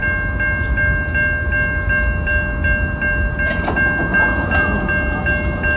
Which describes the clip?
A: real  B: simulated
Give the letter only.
A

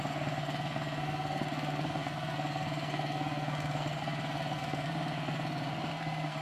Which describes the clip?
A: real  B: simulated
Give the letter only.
B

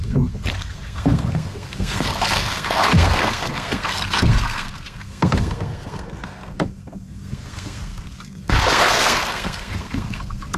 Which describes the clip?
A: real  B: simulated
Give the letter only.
B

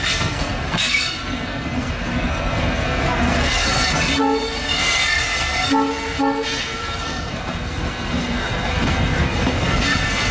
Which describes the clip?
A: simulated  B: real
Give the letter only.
A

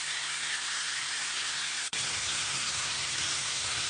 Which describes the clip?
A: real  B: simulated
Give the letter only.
B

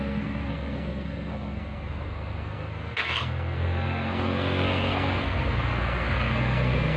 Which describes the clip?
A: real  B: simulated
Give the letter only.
B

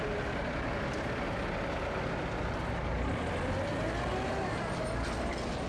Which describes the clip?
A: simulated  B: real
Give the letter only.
B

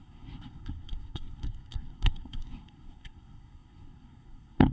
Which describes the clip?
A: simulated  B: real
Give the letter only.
A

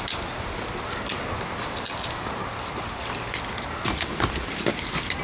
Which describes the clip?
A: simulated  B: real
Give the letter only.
B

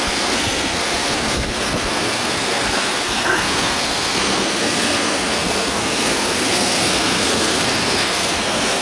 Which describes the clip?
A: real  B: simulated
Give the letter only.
B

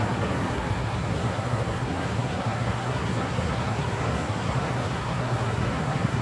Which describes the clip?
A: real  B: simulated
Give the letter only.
B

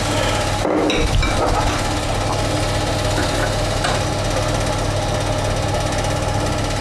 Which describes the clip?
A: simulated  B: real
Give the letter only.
B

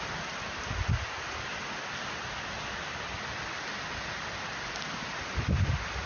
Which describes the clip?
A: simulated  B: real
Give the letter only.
B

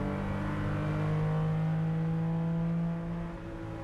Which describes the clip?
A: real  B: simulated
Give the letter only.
A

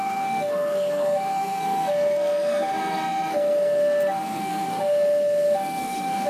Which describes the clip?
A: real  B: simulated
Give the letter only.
B